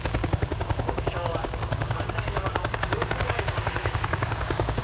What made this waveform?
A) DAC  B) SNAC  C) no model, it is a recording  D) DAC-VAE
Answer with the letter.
A